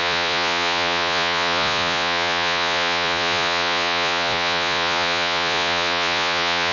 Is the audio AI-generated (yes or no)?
yes